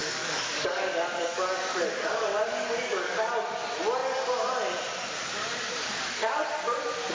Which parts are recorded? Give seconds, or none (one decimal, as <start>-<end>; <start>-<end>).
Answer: 3.3-7.1